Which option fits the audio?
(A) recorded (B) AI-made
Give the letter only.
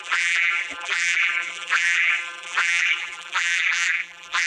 B